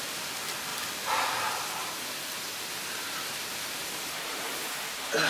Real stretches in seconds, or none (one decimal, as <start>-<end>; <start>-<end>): 0.0-0.7; 3.9-5.3